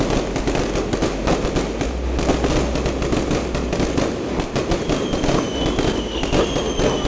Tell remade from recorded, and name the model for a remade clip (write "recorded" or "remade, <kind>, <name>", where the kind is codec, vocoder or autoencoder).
recorded